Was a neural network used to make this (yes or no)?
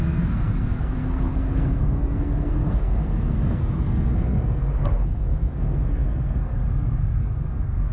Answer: yes